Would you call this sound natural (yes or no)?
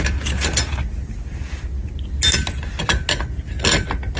yes